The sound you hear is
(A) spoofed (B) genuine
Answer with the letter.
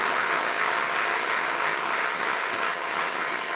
A